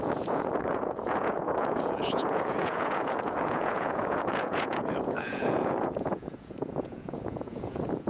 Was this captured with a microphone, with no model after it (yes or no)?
no